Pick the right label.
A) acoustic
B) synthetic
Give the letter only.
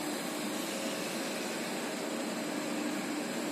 A